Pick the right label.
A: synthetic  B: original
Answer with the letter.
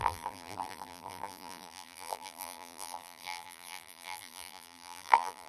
A